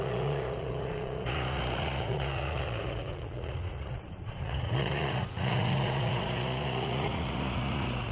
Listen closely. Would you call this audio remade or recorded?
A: remade